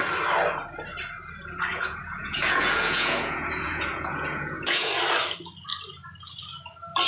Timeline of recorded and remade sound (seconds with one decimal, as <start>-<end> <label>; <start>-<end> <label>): 0.0-1.7 recorded; 1.7-4.9 remade; 4.9-7.1 recorded